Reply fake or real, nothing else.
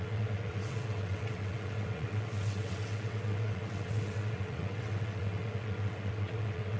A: fake